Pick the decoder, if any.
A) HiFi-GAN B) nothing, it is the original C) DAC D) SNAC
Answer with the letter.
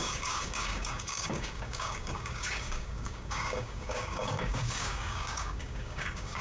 C